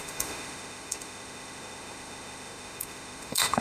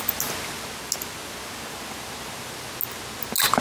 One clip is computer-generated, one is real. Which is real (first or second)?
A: second